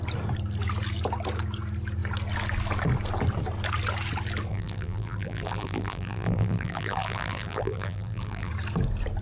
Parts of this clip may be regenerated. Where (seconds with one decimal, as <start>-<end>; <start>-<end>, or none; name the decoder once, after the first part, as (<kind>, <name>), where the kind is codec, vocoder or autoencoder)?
4.5-8.5 (vocoder, BigVGAN v2)